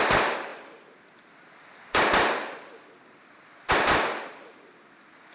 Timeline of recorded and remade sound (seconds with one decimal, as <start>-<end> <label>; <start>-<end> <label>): 0.0-5.3 recorded